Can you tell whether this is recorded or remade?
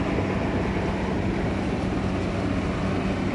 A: recorded